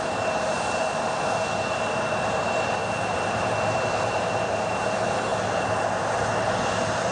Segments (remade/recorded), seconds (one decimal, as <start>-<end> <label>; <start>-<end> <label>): 0.0-7.1 remade